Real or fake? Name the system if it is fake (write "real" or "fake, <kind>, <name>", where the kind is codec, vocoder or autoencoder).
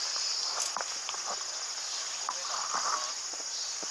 real